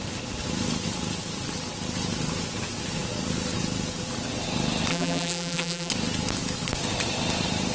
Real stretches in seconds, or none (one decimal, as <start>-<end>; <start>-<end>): 0.0-4.9; 5.9-7.7